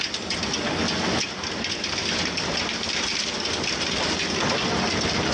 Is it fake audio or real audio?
real